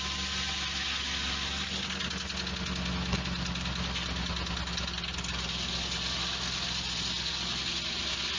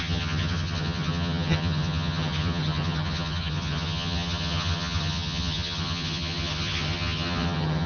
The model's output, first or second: second